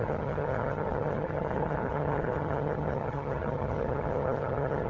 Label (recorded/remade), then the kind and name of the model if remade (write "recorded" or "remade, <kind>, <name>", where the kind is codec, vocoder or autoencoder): remade, vocoder, HiFi-GAN